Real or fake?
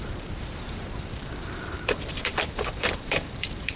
fake